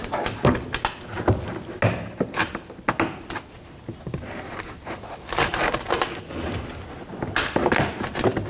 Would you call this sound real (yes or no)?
yes